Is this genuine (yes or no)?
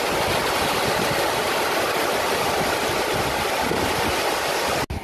yes